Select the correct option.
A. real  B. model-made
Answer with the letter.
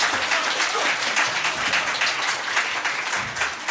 A